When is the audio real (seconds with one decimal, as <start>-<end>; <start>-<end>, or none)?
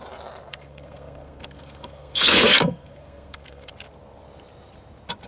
0.0-0.5; 3.7-5.3